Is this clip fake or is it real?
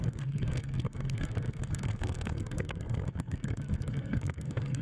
fake